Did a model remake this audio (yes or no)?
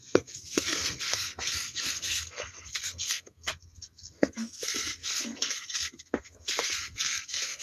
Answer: yes